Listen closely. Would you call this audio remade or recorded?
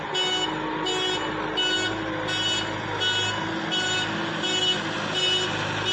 recorded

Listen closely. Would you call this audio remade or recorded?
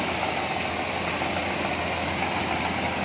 recorded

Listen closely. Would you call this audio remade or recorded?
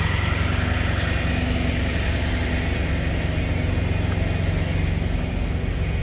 recorded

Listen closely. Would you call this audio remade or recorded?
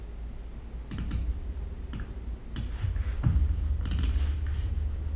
recorded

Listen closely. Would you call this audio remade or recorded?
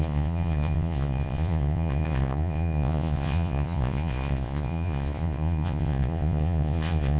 remade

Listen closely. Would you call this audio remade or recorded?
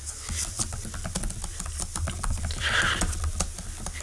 recorded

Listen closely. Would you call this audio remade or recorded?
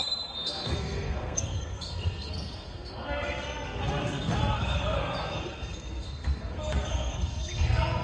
remade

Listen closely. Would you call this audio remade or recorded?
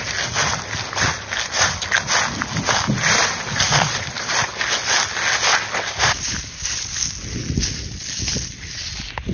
recorded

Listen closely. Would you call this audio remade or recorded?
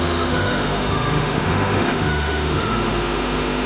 remade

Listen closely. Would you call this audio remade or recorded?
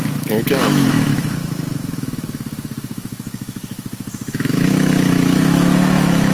remade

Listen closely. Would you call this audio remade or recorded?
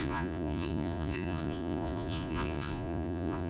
remade